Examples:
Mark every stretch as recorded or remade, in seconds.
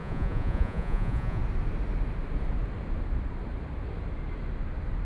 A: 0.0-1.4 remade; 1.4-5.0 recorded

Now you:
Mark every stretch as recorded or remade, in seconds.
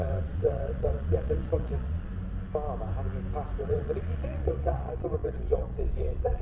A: 0.0-2.1 remade; 2.1-3.6 recorded; 3.6-6.4 remade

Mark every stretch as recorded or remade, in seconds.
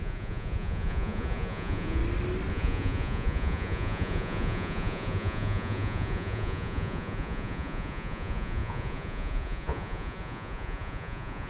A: 0.0-2.0 remade; 2.0-2.5 recorded; 2.5-11.5 remade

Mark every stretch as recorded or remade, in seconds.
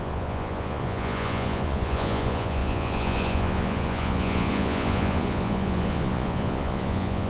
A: 0.0-7.3 remade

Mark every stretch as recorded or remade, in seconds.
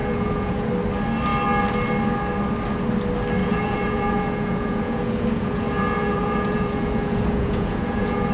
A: 0.0-0.7 remade; 0.7-3.4 recorded; 3.4-8.3 remade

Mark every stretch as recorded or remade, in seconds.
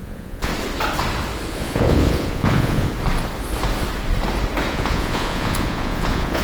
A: 0.0-0.5 remade; 0.5-1.5 recorded; 1.5-2.9 remade; 2.9-4.7 recorded; 4.7-6.4 remade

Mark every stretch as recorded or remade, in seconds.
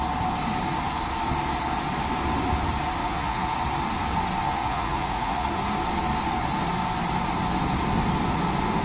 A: 0.0-3.0 recorded; 3.0-3.5 remade; 3.5-4.6 recorded; 4.6-5.5 remade; 5.5-8.8 recorded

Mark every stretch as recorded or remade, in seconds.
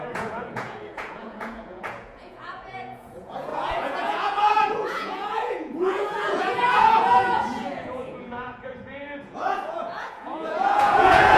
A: 0.0-11.4 remade